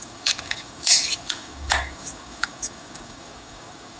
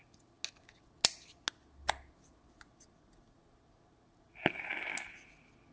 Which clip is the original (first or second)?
second